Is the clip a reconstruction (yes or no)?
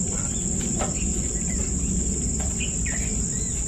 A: no